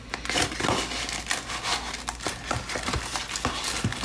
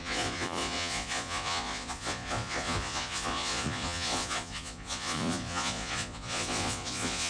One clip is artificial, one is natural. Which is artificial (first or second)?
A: second